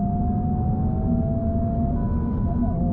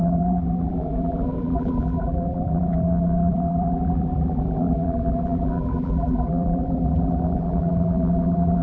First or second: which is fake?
second